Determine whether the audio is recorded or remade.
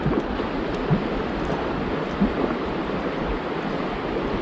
recorded